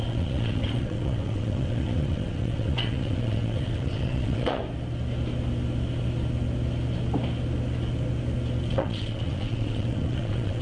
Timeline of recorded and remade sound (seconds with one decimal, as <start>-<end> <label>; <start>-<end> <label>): 0.0-4.6 remade; 4.6-8.7 recorded; 8.7-10.6 remade